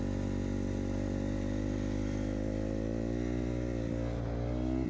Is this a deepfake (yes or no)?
no